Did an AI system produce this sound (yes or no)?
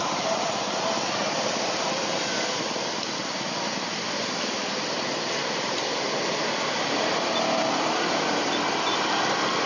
no